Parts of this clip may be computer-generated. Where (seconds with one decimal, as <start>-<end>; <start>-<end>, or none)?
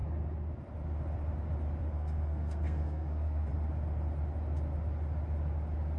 1.8-3.5